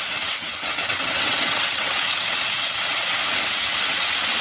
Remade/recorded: remade